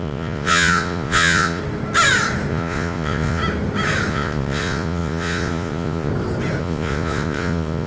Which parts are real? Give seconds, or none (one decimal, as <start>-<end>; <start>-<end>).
1.6-2.5; 3.4-4.1; 6.1-6.6